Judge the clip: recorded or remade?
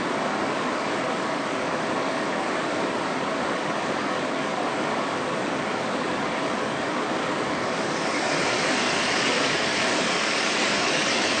remade